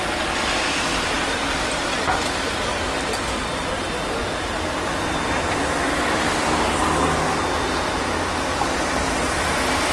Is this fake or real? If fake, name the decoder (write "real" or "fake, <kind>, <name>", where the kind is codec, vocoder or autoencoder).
real